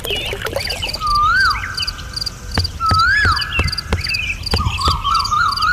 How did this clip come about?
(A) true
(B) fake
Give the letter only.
A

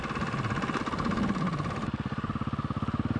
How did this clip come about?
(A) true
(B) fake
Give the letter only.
A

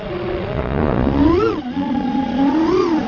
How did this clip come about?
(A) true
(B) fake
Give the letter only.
B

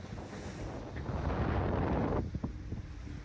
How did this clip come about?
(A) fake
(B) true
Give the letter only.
B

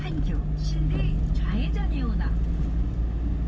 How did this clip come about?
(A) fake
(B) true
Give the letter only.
B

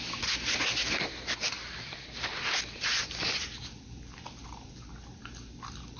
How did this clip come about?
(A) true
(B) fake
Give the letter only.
A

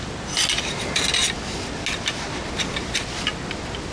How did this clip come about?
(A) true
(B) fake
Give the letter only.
A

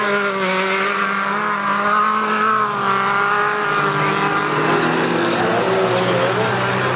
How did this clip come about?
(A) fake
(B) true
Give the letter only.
B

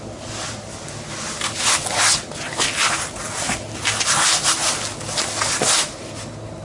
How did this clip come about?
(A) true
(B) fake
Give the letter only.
A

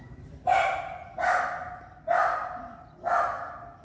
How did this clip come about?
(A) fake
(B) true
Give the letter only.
B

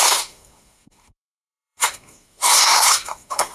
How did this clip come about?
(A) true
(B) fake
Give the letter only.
B